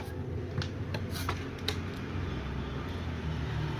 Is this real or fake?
real